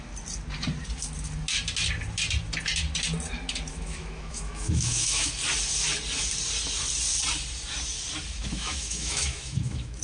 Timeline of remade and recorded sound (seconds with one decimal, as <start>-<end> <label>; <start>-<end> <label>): 0.0-3.7 recorded; 3.7-5.3 remade; 5.3-8.4 recorded; 8.4-10.0 remade